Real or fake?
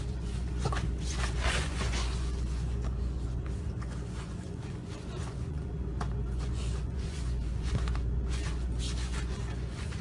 fake